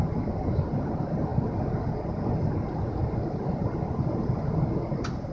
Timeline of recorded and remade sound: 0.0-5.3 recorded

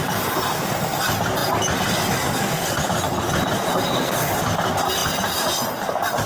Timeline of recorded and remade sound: 0.0-3.7 recorded; 3.7-4.3 remade; 4.3-6.3 recorded

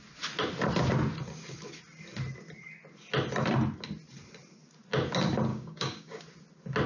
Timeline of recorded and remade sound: 0.0-5.5 recorded; 5.5-6.2 remade; 6.2-6.9 recorded

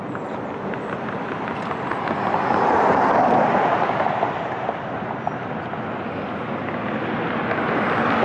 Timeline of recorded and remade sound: 0.0-1.9 remade; 1.9-6.5 recorded; 6.5-8.2 remade

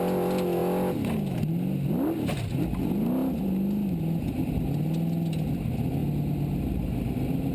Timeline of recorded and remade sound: 0.0-7.5 recorded

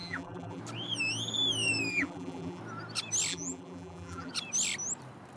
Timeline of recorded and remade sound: 0.0-0.6 remade; 0.6-1.9 recorded; 1.9-2.6 remade; 2.6-3.3 recorded; 3.3-4.3 remade; 4.3-5.4 recorded

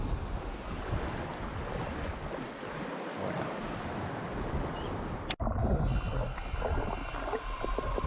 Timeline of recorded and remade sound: 0.0-8.1 recorded

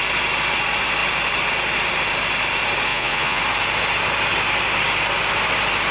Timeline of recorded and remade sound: 0.0-2.9 recorded; 2.9-3.4 remade; 3.4-5.9 recorded